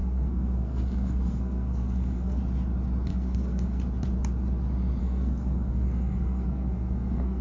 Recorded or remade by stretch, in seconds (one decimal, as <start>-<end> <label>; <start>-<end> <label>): 0.0-2.4 remade; 2.4-3.1 recorded; 3.1-3.8 remade; 3.8-5.0 recorded; 5.0-7.4 remade